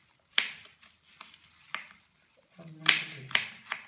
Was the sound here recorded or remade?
recorded